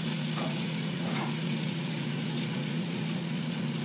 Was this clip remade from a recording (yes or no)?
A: yes